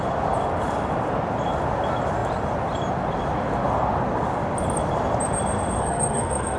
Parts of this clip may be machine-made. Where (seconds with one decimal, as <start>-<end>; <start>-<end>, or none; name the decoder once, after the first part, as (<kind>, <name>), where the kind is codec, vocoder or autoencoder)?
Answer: 5.8-6.6 (codec, SNAC)